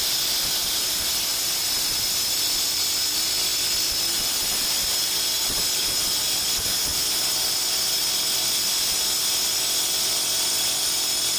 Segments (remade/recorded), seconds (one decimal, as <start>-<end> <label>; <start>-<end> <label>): 0.0-11.4 recorded